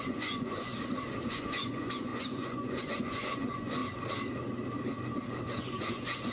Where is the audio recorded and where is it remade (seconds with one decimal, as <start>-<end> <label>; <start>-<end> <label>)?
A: 0.0-0.7 remade; 0.7-1.3 recorded; 1.3-3.8 remade; 3.8-5.5 recorded; 5.5-6.3 remade